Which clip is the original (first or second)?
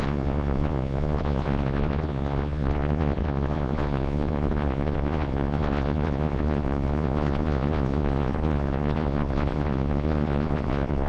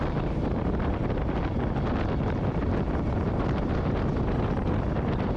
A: second